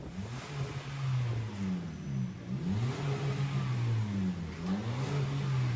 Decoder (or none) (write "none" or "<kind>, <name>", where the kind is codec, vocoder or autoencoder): none